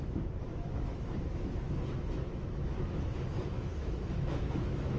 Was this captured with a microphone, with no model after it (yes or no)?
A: no